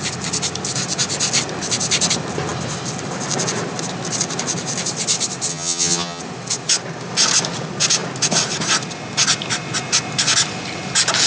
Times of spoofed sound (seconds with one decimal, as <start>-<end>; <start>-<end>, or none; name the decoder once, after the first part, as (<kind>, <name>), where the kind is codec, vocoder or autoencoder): 5.5-6.2 (vocoder, HiFi-GAN)